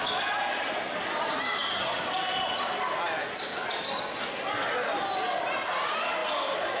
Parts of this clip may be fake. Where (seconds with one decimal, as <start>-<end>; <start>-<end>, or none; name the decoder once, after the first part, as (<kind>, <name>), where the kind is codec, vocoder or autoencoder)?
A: none